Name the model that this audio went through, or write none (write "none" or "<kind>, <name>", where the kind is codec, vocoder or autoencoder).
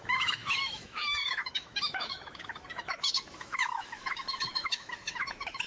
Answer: autoencoder, DAC-VAE